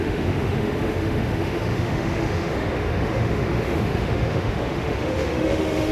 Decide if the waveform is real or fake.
fake